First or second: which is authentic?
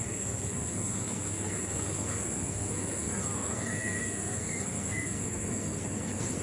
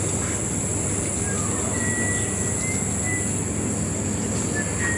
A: second